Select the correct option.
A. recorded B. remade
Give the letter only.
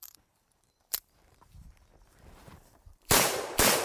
B